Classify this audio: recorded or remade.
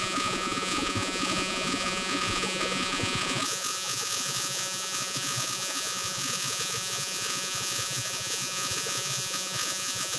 remade